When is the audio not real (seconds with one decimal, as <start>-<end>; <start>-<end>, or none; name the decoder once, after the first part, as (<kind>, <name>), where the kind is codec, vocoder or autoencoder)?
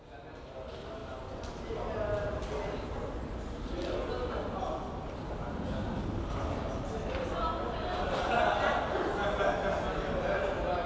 none